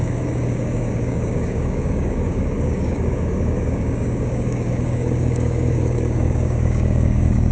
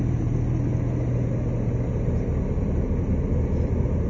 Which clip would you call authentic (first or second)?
second